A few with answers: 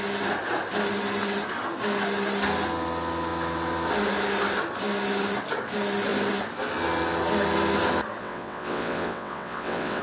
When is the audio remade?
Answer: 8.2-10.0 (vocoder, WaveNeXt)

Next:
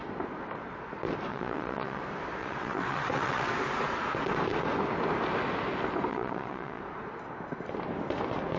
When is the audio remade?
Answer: 1.3-2.0 (vocoder, WaveNeXt); 2.4-3.5; 6.1-6.8

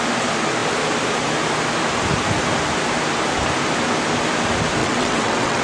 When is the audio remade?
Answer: 4.8-5.6 (vocoder, WaveNeXt)